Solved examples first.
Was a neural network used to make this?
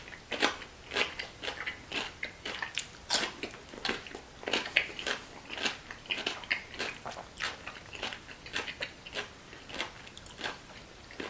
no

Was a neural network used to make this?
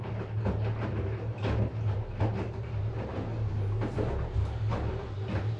no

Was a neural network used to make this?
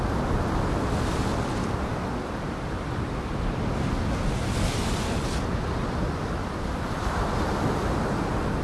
no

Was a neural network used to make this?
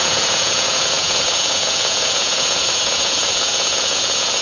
yes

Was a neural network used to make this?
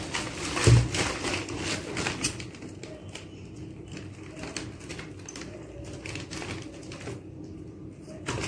no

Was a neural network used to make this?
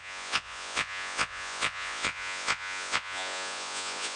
yes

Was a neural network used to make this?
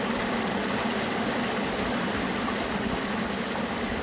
no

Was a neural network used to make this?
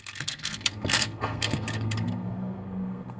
yes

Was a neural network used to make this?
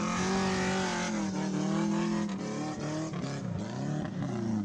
no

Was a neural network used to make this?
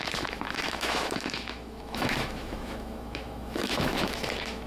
yes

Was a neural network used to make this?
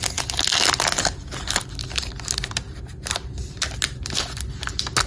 no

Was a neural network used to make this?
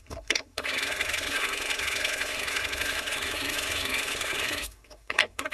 yes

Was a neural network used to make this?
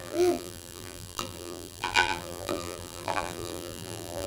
yes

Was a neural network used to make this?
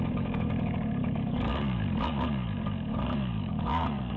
yes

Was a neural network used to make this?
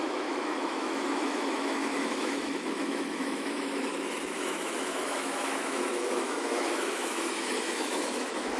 yes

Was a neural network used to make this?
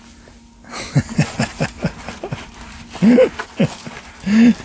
no